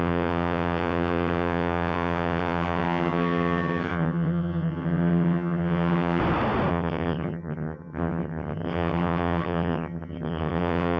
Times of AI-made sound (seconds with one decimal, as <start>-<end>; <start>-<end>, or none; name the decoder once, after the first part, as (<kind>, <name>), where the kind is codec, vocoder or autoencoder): 0.0-6.2 (vocoder, HiFi-GAN); 6.7-11.0